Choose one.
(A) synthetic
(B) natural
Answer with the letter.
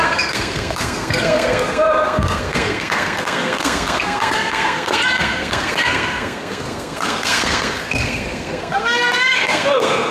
A